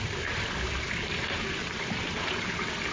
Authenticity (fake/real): fake